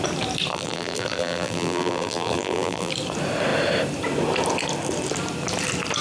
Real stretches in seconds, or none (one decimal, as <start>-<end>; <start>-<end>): 0.0-0.5; 2.9-6.0